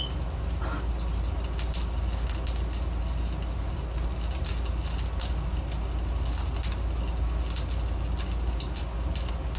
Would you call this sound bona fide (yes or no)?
yes